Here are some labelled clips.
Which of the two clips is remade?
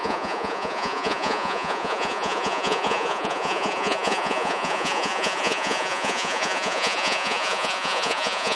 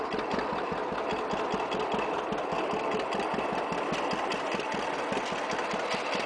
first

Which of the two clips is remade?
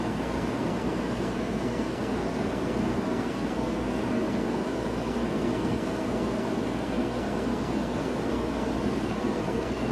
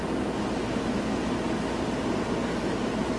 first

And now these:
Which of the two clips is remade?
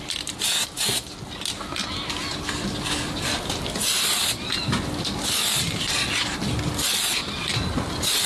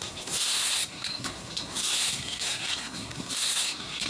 second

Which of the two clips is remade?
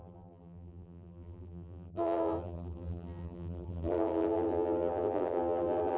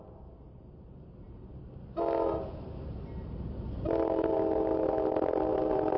first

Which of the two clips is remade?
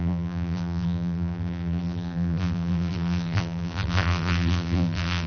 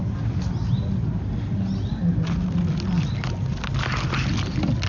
first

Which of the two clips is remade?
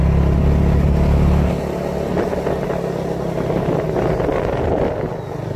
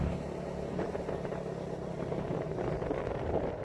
second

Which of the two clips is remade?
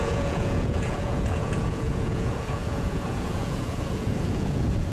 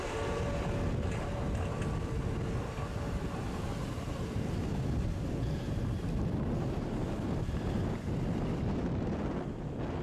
first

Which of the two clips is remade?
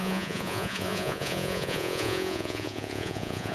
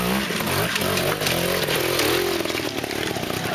first